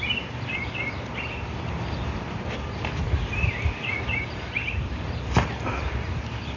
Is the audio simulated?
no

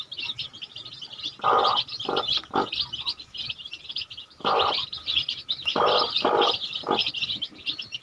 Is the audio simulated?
no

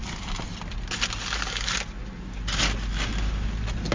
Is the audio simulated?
no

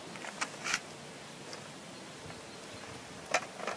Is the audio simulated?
no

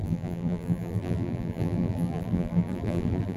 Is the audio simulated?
yes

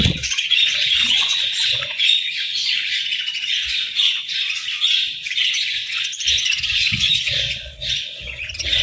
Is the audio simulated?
yes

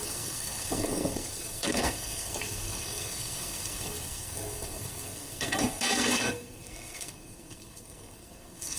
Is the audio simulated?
yes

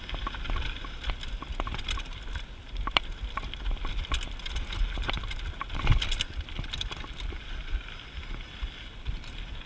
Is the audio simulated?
no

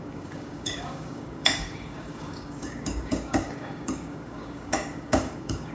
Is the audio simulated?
yes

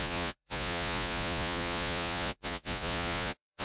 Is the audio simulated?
yes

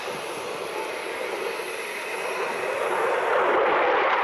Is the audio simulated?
no